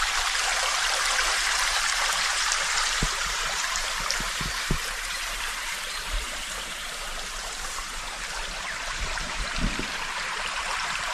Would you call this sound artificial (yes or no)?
yes